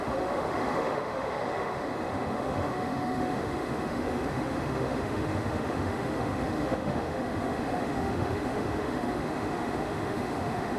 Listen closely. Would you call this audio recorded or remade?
remade